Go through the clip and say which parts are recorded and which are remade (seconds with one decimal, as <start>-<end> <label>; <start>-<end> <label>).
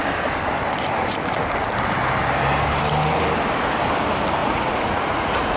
0.0-4.4 recorded; 4.4-5.6 remade